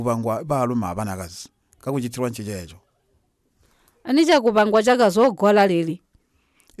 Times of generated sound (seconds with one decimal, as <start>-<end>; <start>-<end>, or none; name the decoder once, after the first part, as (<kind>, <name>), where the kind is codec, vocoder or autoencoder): none